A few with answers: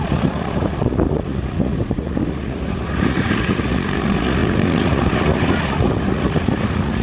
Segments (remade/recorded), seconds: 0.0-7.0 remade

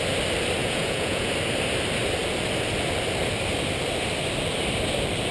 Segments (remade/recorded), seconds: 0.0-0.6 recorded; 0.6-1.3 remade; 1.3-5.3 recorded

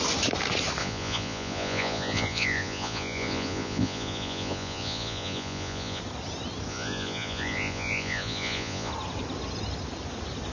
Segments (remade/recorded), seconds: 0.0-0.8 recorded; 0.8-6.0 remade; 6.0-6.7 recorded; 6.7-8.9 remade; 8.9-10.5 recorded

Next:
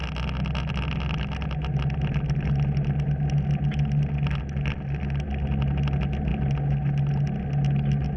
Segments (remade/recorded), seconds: 0.0-8.2 recorded

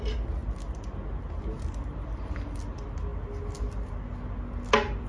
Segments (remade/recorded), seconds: 0.0-5.1 recorded

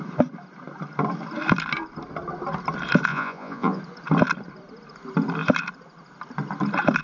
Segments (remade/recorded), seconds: 0.0-3.1 recorded; 3.1-3.8 remade; 3.8-7.0 recorded

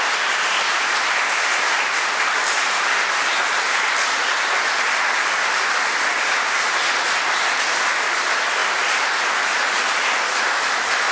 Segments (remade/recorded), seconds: 0.0-11.1 recorded

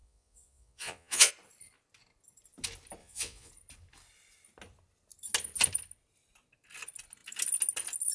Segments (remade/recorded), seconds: 0.0-1.3 remade; 1.3-3.0 recorded; 3.0-3.5 remade; 3.5-8.1 recorded